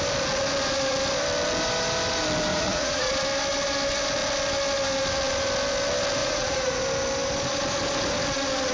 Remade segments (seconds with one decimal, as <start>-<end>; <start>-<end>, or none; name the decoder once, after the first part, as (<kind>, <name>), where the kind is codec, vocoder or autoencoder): 2.5-3.1 (vocoder, Vocos); 6.2-6.8